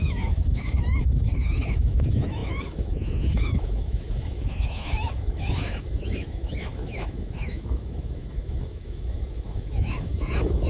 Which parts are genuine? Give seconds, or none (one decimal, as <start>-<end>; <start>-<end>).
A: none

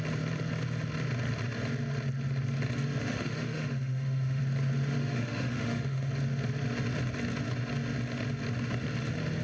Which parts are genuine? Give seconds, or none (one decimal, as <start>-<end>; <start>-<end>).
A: 0.0-3.0; 4.4-5.0; 6.1-9.4

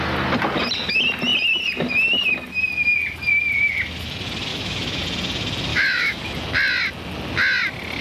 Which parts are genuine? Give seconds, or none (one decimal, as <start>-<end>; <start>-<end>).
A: 0.0-4.5; 5.0-5.7; 6.2-8.0